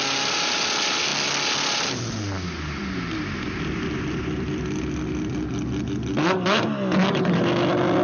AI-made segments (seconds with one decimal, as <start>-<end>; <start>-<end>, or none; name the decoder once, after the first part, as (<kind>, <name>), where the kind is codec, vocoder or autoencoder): none